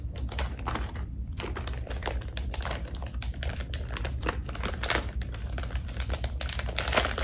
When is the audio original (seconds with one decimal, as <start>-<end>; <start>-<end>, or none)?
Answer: none